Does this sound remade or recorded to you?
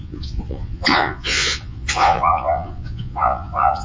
remade